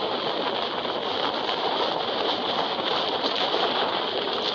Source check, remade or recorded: recorded